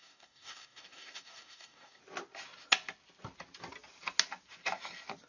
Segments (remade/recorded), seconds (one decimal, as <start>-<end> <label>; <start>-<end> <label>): 0.0-2.0 remade; 2.0-5.3 recorded